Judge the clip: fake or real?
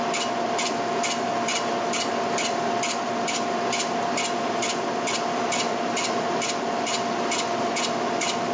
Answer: real